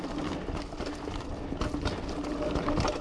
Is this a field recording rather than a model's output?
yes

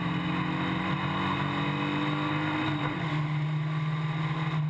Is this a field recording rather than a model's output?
yes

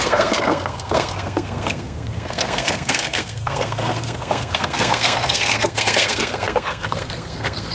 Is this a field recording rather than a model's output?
no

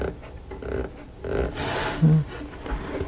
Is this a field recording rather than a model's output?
yes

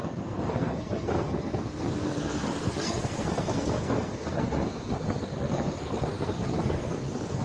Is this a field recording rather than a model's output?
no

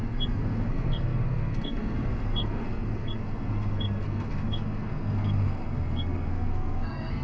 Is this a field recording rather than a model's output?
no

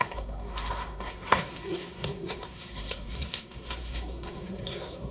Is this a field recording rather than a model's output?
no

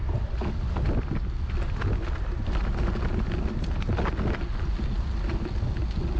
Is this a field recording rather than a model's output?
yes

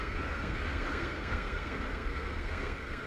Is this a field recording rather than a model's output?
no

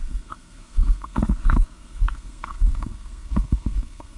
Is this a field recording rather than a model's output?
no